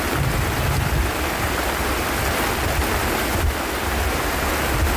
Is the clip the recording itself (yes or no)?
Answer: yes